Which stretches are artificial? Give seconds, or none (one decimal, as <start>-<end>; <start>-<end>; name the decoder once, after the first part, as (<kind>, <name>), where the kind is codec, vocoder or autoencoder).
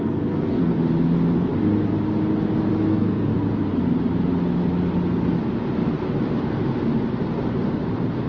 0.0-0.7 (codec, SNAC); 2.9-3.3